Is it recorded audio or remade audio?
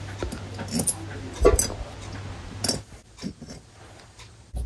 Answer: recorded